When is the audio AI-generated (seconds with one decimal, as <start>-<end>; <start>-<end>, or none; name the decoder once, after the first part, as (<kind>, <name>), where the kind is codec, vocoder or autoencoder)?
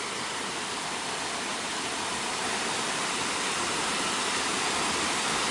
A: 1.5-4.6 (vocoder, BigVGAN v2)